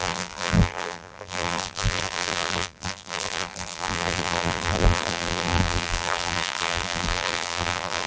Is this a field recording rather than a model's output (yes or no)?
no